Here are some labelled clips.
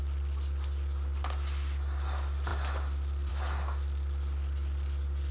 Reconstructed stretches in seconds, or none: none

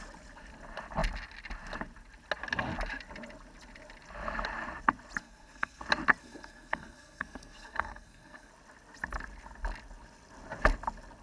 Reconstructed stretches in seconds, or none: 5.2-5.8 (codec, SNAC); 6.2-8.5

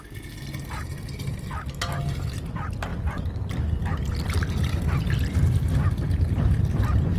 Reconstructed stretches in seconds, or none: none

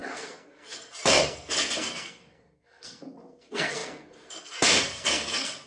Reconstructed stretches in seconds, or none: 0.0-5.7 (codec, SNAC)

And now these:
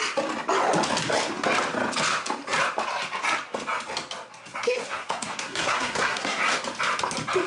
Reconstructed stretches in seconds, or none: 4.5-6.4 (codec, SNAC)